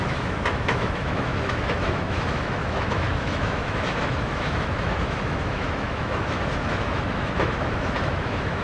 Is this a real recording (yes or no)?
no